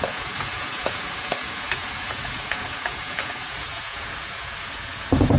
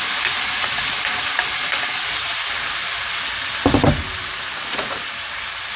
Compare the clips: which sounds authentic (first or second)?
second